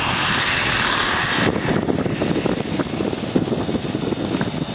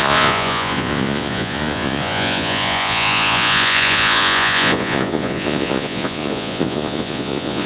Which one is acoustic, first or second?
first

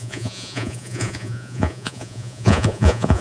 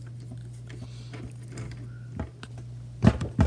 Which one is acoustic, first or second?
second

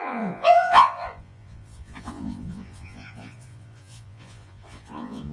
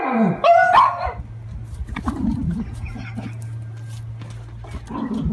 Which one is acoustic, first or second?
second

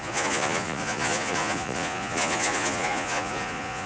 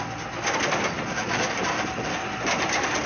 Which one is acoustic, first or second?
second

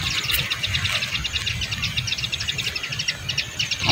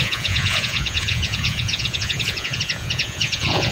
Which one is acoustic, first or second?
first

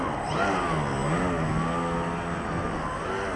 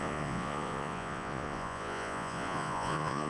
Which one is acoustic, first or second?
first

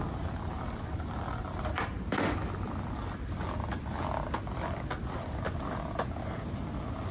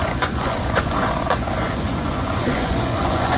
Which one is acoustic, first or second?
first